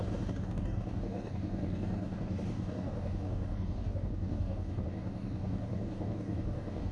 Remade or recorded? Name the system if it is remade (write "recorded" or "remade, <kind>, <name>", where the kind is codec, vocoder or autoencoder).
remade, codec, DAC